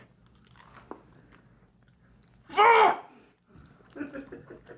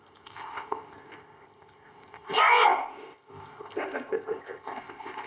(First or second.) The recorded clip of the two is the first